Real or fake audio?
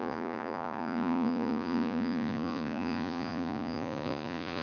fake